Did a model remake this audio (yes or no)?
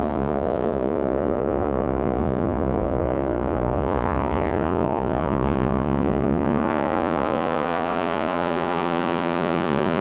yes